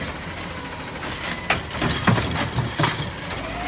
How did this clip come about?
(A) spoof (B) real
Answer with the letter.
B